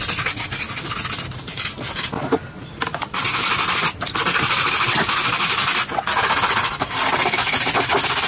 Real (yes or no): yes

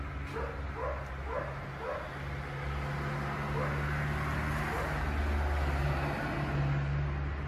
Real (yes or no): yes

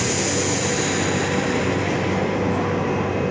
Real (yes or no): yes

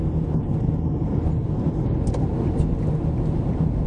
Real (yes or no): yes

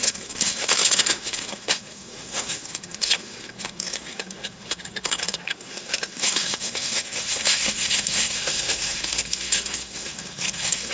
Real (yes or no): no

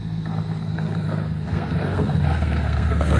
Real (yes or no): no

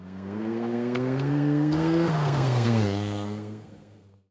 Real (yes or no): no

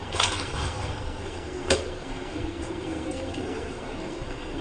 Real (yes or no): no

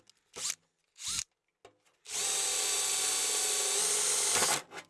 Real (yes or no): yes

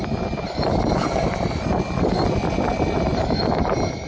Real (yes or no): yes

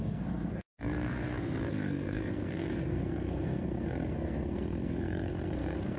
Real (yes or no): no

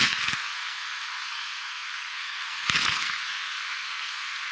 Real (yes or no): no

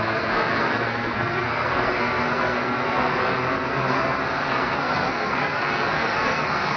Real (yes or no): no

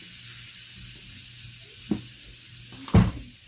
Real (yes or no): yes